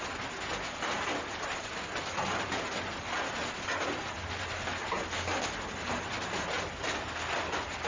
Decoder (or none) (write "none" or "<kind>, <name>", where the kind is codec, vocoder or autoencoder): none